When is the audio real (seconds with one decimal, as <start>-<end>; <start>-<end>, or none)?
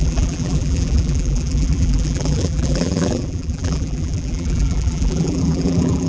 none